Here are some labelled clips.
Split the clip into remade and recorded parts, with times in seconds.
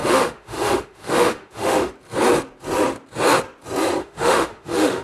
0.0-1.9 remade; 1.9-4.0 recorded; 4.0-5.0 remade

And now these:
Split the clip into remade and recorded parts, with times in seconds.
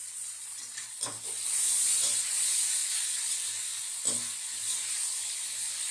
0.0-1.0 remade; 1.0-5.9 recorded